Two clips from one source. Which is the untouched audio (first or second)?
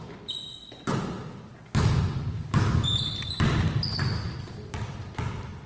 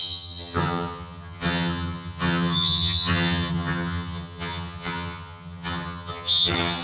first